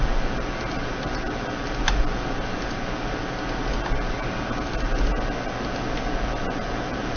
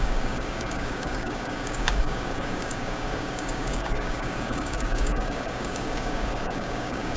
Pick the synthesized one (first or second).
second